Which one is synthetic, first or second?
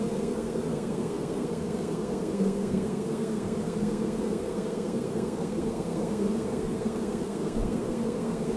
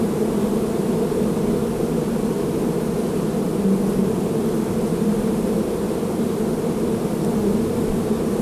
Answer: first